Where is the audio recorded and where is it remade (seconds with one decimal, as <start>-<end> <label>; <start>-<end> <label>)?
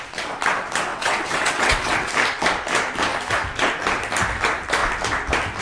0.0-0.9 recorded; 0.9-2.1 remade; 2.1-5.6 recorded